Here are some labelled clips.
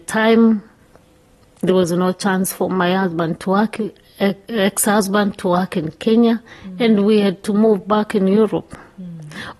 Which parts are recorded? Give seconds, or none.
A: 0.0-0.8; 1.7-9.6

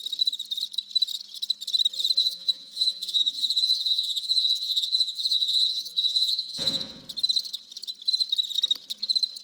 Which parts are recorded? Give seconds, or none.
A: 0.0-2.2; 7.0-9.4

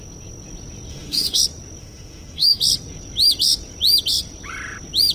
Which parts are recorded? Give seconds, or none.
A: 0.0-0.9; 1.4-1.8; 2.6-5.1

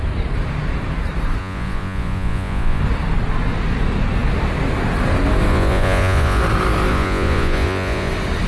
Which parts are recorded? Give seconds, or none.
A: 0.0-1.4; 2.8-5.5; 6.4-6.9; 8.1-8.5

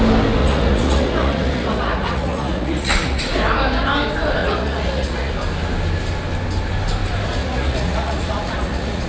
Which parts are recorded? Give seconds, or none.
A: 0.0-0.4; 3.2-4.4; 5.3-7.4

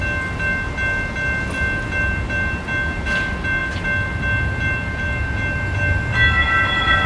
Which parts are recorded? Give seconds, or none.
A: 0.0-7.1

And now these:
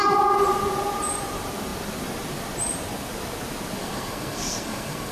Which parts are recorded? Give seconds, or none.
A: 0.0-3.8